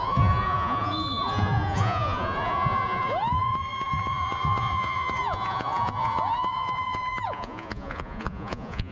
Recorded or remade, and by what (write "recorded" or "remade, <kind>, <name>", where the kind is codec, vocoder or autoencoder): remade, vocoder, Vocos